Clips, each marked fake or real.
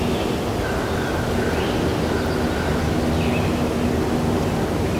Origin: real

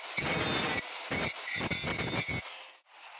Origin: real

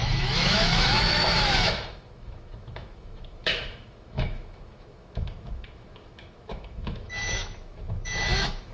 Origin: fake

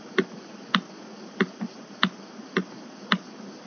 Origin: real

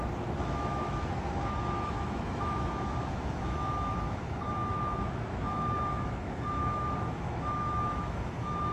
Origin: fake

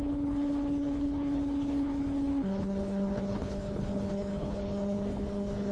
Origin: fake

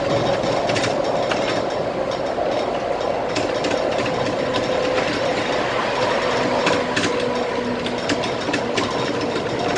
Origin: real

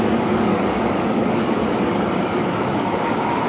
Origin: fake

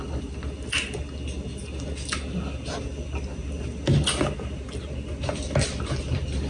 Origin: real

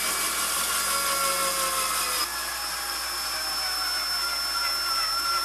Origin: real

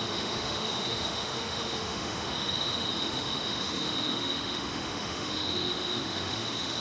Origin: fake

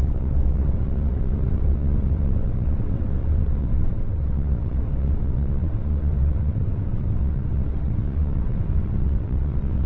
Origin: fake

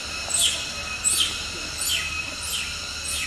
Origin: real